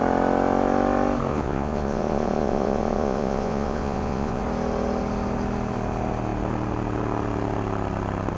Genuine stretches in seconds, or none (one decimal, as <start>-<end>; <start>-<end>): 0.0-1.3; 4.4-8.4